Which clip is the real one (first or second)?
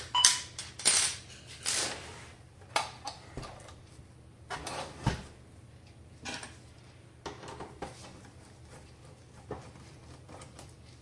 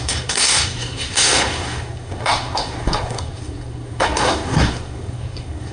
first